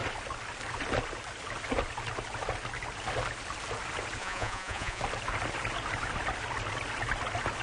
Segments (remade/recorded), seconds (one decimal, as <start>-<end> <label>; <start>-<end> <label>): 0.0-4.2 recorded; 4.2-5.0 remade; 5.0-7.6 recorded